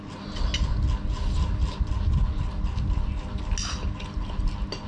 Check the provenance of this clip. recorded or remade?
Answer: recorded